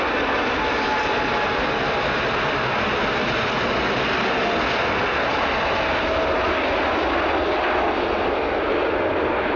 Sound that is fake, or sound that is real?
real